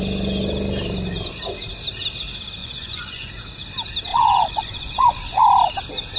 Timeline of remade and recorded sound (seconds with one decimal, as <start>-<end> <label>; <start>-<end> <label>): 0.0-2.6 recorded; 2.6-3.3 remade; 3.3-4.1 recorded; 4.1-5.4 remade; 5.4-6.2 recorded